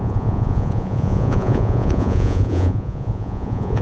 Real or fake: fake